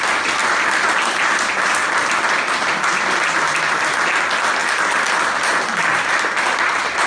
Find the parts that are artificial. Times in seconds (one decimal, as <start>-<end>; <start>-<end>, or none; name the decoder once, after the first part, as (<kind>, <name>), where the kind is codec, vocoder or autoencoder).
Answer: none